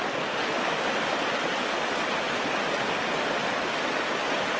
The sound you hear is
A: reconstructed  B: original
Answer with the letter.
B